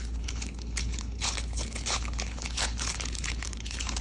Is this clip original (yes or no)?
no